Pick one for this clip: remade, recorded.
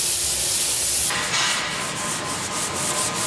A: recorded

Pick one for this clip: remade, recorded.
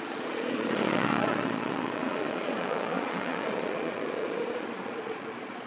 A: remade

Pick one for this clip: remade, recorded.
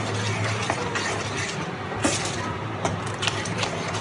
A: recorded